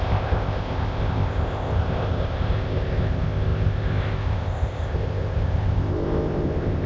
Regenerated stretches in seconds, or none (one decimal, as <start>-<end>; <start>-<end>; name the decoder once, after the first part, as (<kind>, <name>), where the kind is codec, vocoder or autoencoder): 0.0-6.9 (codec, ZipCodec)